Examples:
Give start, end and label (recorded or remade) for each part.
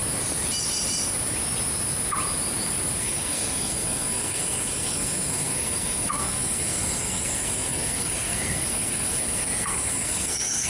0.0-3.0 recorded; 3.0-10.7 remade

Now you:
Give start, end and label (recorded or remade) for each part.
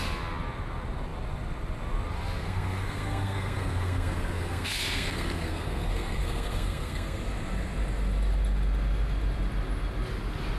0.0-2.4 recorded; 2.4-7.2 remade; 7.2-10.6 recorded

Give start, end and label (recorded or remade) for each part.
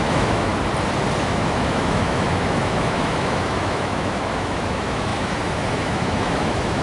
0.0-0.5 remade; 0.5-1.2 recorded; 1.2-6.8 remade